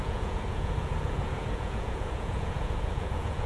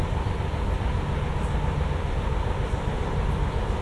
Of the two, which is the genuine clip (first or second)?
second